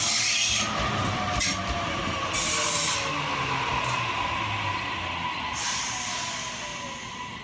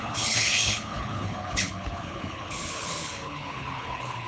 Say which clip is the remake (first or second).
second